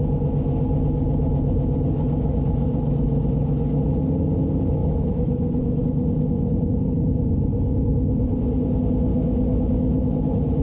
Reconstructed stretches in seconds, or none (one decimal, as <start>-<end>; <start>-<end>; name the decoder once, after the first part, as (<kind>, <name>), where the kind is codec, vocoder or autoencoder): 4.8-5.8 (autoencoder, DAC-VAE); 9.1-10.6

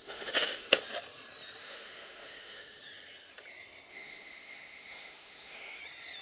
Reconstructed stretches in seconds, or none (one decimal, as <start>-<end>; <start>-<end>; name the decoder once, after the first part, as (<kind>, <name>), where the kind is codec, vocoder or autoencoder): 0.0-0.8 (autoencoder, DAC-VAE); 1.6-2.8; 3.9-5.8

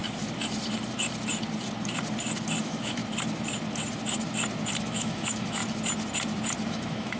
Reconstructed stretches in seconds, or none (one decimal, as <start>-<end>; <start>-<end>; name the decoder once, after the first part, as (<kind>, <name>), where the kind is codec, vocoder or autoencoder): 2.6-3.0 (autoencoder, DAC-VAE); 4.8-5.6; 6.7-7.2

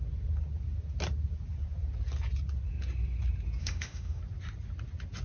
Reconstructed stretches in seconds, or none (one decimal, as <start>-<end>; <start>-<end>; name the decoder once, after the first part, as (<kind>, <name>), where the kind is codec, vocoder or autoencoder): 3.6-4.2 (autoencoder, DAC-VAE)

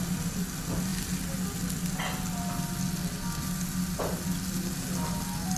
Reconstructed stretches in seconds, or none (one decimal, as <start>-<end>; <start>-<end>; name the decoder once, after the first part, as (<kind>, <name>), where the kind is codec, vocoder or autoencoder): none